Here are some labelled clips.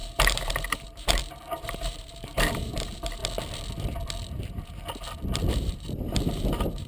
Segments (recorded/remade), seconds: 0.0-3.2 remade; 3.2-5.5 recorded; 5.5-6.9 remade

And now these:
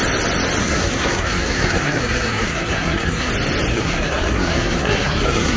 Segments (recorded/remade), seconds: 0.0-0.6 recorded; 0.6-3.3 remade; 3.3-3.7 recorded; 3.7-5.6 remade

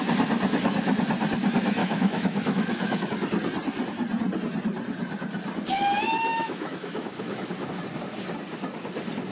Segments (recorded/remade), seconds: 0.0-1.8 recorded; 1.8-3.1 remade; 3.1-6.3 recorded; 6.3-7.5 remade; 7.5-9.3 recorded

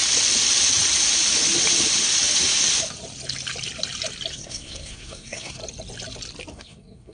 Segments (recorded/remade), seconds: 0.0-4.3 recorded; 4.3-5.6 remade; 5.6-6.5 recorded; 6.5-7.1 remade

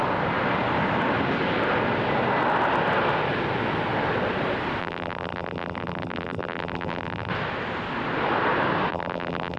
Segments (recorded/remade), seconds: 0.0-4.8 recorded; 4.8-7.3 remade; 7.3-8.9 recorded; 8.9-9.6 remade

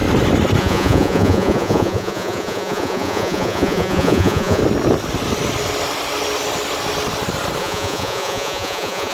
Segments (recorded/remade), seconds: 0.0-0.6 recorded; 0.6-4.6 remade; 4.6-7.6 recorded; 7.6-9.1 remade